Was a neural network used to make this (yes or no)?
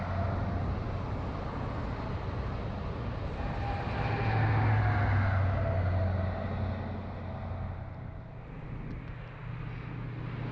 no